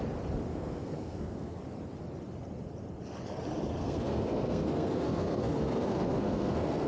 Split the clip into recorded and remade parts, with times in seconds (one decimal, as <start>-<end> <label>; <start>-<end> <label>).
0.0-0.5 recorded; 0.5-1.6 remade; 1.6-3.8 recorded; 3.8-6.9 remade